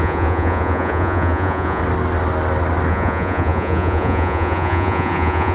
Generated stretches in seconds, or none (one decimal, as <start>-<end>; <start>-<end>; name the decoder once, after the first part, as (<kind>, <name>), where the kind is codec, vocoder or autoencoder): 0.0-1.8 (vocoder, Vocos); 2.9-5.5